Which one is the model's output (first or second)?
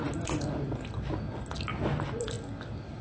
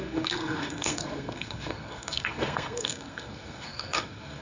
second